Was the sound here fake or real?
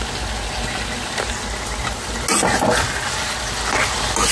real